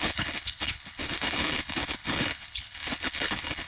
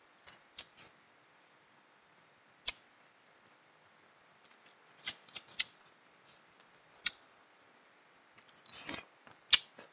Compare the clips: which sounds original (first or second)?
second